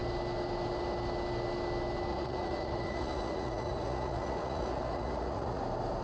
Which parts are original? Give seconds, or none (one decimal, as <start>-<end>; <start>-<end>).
0.0-2.1; 5.6-6.0

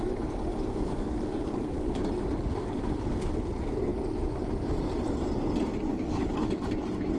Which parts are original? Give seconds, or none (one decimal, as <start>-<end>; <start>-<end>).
0.0-0.7; 3.3-5.9; 6.6-7.2

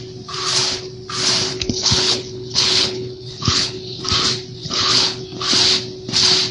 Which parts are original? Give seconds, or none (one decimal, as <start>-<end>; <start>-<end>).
0.0-1.5; 4.0-4.6; 5.2-6.5

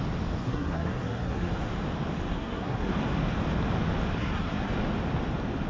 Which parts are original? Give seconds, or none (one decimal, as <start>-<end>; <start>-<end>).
0.0-0.4; 1.5-2.3; 2.9-4.2; 4.7-5.7

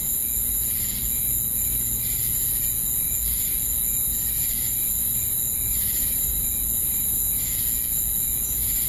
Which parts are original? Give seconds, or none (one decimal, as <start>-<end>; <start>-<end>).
0.0-5.7; 6.5-6.9; 7.5-8.9

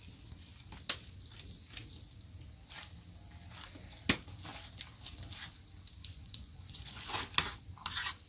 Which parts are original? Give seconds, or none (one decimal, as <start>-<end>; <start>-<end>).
0.0-6.0; 7.1-8.3

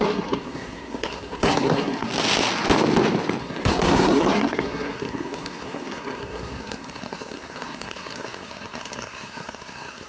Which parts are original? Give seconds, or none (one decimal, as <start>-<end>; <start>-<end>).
2.1-3.4